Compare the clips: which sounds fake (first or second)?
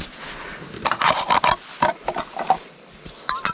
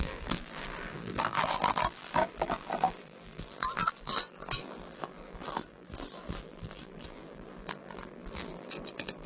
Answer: second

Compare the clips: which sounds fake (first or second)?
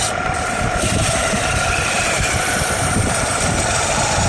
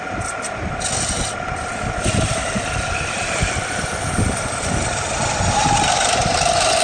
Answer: first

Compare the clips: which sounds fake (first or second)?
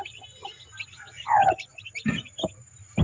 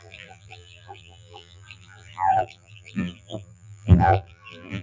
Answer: second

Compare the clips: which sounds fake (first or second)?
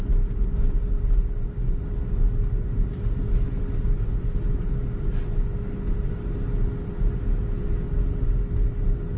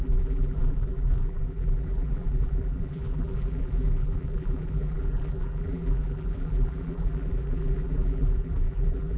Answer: second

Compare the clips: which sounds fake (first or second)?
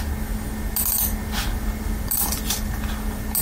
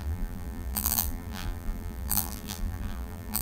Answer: second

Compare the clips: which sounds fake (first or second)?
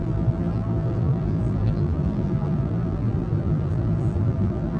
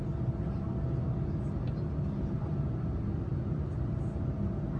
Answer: first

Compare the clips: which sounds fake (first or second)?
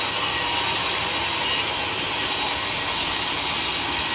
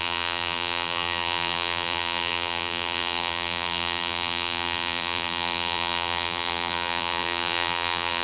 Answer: second